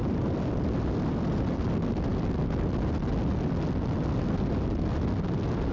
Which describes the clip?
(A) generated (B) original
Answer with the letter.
B